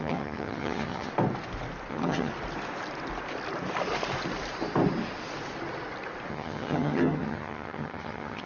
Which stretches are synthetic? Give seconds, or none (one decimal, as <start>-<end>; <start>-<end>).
0.0-1.1; 1.9-2.3; 6.3-8.5